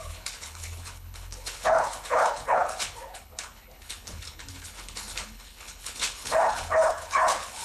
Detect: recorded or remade remade